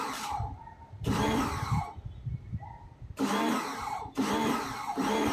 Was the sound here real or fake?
fake